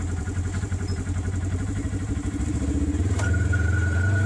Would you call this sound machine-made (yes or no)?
yes